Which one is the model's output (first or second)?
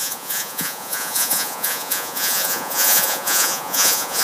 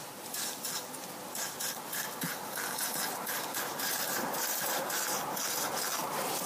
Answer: first